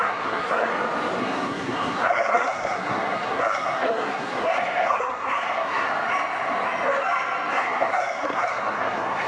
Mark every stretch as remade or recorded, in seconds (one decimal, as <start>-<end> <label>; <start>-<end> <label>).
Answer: 0.0-0.7 remade; 0.7-1.2 recorded; 1.2-5.9 remade; 5.9-7.5 recorded; 7.5-9.3 remade

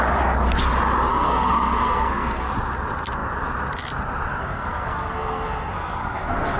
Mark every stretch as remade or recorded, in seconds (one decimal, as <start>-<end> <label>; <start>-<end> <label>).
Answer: 0.0-1.1 recorded; 1.1-2.5 remade; 2.5-4.4 recorded; 4.4-6.6 remade

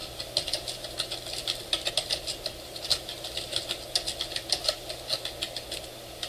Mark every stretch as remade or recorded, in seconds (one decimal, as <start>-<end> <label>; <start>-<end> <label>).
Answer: 0.0-6.3 recorded

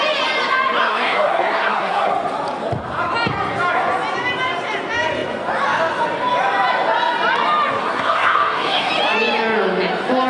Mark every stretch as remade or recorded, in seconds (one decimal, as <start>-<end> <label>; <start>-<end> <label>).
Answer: 0.0-0.8 recorded; 0.8-2.1 remade; 2.1-7.8 recorded; 7.8-8.9 remade; 8.9-10.3 recorded

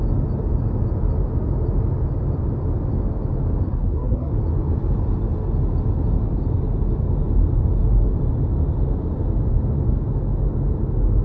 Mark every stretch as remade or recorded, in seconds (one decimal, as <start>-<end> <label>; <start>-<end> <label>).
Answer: 0.0-3.7 recorded; 3.7-4.3 remade; 4.3-11.2 recorded

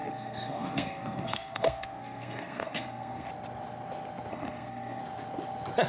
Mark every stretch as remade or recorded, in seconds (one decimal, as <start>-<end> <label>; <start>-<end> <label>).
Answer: 0.0-3.3 remade; 3.3-4.3 recorded; 4.3-5.0 remade; 5.0-5.9 recorded

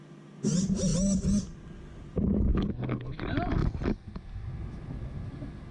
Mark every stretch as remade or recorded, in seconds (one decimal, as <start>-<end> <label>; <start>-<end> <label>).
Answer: 0.0-2.5 recorded; 2.5-3.2 remade; 3.2-5.7 recorded